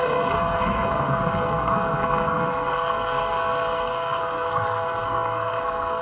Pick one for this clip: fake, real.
fake